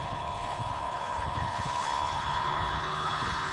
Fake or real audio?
fake